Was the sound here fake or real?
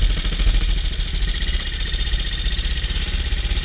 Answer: real